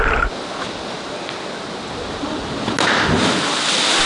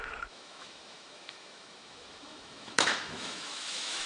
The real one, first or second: first